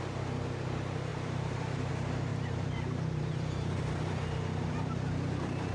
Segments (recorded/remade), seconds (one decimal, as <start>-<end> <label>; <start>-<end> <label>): 0.0-1.1 recorded; 1.1-1.9 remade; 1.9-2.3 recorded; 2.3-5.7 remade